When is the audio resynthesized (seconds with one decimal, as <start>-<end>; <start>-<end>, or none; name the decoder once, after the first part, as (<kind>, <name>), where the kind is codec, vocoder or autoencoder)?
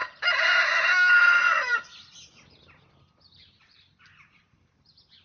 0.0-0.6 (vocoder, BigVGAN v2); 1.4-4.5